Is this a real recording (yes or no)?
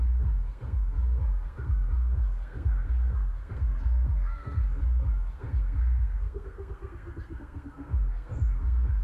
no